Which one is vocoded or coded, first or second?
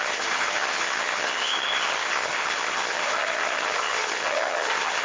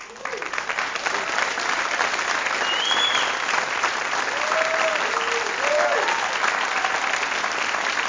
first